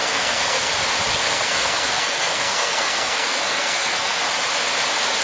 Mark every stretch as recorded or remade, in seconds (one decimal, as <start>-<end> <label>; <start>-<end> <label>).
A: 0.0-0.7 remade; 0.7-1.1 recorded; 1.1-4.2 remade; 4.2-5.2 recorded